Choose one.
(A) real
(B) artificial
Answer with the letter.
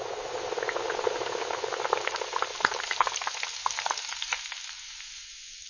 A